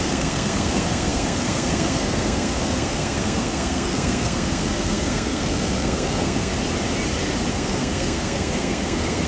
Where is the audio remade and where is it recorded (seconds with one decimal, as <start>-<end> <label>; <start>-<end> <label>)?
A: 0.0-6.5 remade; 6.5-7.5 recorded; 7.5-9.3 remade